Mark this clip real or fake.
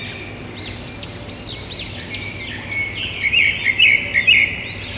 real